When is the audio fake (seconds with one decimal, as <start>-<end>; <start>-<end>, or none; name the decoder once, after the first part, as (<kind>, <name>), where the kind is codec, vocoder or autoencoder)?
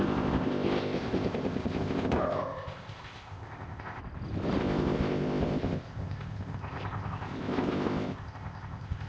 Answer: 0.0-4.0 (codec, ZipCodec); 4.6-9.1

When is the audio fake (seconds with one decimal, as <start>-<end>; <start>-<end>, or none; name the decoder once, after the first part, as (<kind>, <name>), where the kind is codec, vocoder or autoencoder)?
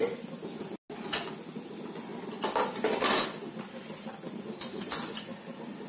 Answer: none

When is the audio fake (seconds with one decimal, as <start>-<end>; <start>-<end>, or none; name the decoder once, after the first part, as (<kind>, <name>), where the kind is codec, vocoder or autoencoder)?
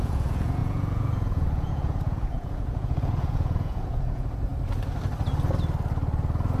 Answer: 0.0-4.5 (vocoder, Vocos)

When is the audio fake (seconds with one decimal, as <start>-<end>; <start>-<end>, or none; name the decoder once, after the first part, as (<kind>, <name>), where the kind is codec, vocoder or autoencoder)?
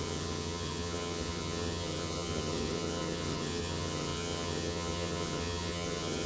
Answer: 0.0-6.3 (vocoder, HiFi-GAN)